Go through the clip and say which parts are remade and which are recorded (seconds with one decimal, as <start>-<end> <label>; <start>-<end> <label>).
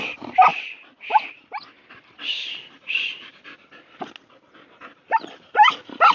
0.0-6.1 recorded